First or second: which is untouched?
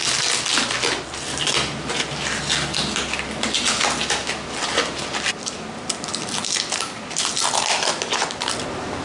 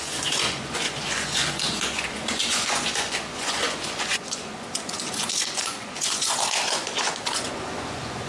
first